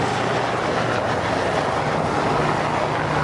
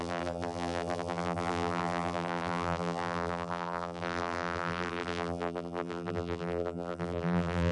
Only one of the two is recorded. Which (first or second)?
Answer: first